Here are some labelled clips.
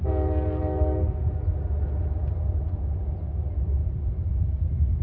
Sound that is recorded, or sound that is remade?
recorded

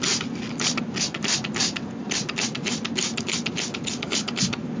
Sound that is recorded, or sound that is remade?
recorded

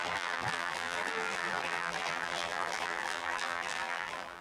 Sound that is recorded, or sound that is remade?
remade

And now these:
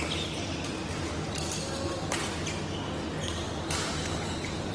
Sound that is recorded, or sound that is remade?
recorded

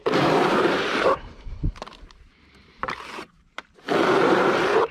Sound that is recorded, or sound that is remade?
remade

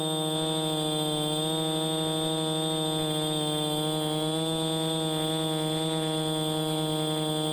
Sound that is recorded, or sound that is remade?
recorded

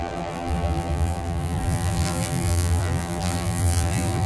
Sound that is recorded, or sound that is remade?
remade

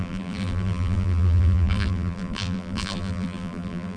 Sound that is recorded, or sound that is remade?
remade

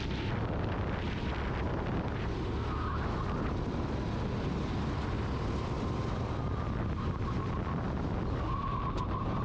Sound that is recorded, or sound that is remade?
recorded